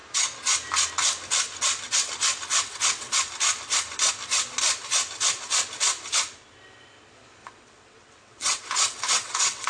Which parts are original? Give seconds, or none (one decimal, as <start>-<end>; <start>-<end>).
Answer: 0.0-2.5; 3.2-7.4